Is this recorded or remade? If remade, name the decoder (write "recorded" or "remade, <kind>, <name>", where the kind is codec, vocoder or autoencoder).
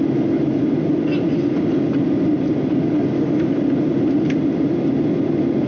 recorded